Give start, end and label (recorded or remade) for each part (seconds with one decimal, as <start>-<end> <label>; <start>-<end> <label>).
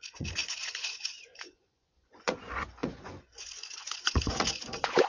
0.0-5.1 remade